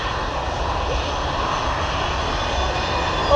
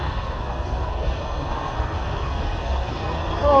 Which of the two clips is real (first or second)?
first